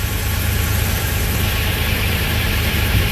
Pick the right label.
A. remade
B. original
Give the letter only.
A